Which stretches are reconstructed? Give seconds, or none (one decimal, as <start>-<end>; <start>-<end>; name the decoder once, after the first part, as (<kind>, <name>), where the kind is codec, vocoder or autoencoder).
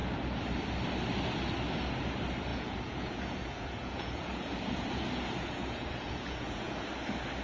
2.5-6.8 (vocoder, Vocos)